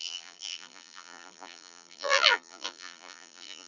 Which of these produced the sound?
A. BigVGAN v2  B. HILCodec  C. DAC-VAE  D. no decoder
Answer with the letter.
A